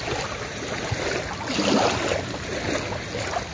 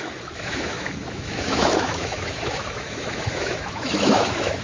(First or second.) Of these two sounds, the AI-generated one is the second